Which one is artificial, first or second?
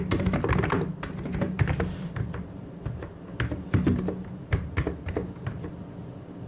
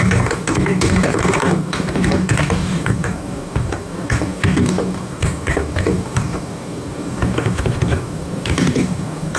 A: second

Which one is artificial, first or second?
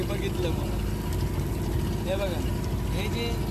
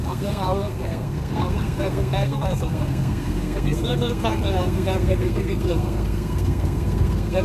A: second